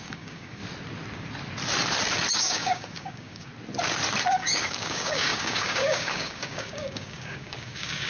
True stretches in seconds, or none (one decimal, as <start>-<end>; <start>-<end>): 0.6-2.3; 3.5-4.3